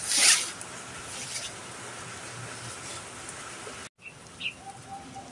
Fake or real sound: real